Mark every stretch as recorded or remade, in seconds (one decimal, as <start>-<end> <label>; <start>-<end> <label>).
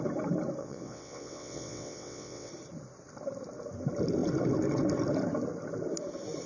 0.0-0.6 recorded; 0.6-2.5 remade; 2.5-6.5 recorded